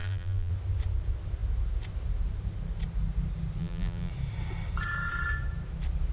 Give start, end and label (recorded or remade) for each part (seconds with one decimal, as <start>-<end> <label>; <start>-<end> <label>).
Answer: 0.0-0.5 remade; 0.5-3.6 recorded; 3.6-4.1 remade; 4.1-6.1 recorded